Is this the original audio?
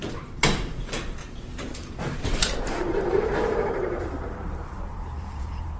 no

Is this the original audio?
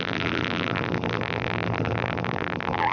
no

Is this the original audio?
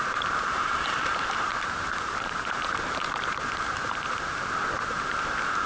no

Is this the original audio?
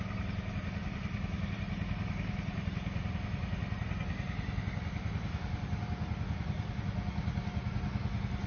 yes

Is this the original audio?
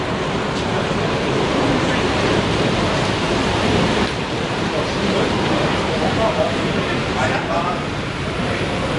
no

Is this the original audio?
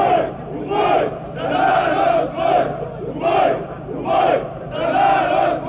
no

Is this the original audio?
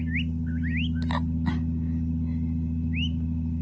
yes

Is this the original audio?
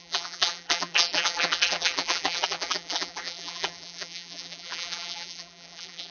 no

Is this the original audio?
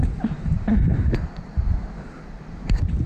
no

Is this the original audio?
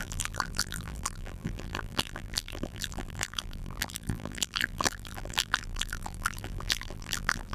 no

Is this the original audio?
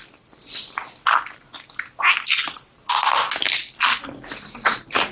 yes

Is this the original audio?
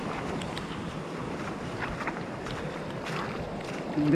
yes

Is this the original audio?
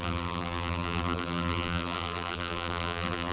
no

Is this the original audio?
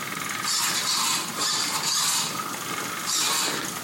yes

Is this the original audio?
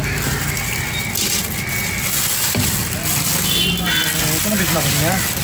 yes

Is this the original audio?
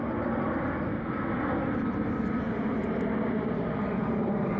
yes